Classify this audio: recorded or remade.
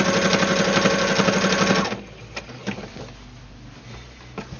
recorded